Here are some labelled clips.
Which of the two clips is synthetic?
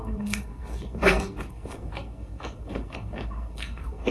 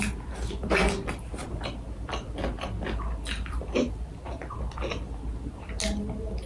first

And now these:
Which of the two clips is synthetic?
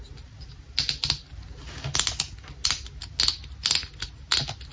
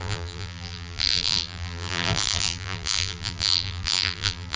second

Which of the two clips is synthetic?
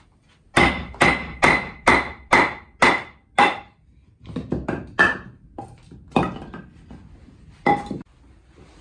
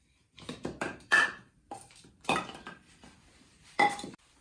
second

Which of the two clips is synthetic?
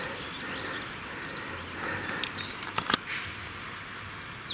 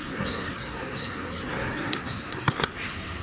second